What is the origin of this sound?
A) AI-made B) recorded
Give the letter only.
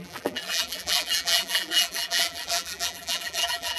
A